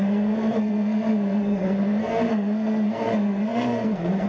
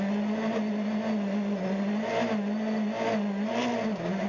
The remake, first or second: first